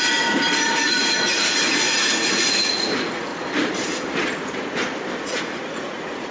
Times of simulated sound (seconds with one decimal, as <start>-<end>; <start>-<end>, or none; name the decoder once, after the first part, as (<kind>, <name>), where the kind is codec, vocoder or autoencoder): 0.0-3.3 (vocoder, Vocos); 5.2-6.3